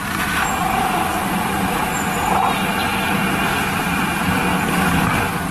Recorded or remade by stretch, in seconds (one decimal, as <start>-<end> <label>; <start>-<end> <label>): 0.0-5.5 recorded